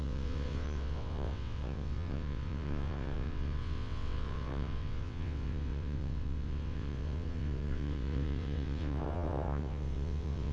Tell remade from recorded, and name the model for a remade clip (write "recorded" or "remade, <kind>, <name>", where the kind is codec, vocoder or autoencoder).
remade, vocoder, WaveNeXt